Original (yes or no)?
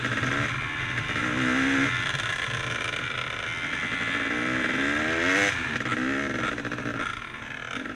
yes